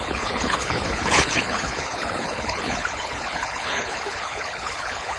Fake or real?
fake